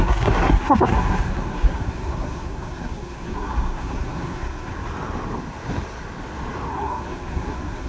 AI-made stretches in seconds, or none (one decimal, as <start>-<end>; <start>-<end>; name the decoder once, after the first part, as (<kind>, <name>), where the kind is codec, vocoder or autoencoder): 0.0-4.7 (codec, SNAC); 6.7-7.9